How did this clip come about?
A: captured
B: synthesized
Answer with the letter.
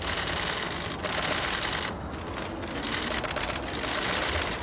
A